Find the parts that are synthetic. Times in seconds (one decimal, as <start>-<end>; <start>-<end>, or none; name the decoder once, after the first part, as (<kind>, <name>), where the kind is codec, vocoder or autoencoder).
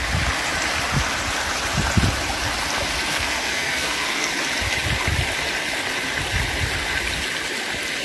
3.1-4.3 (codec, SNAC)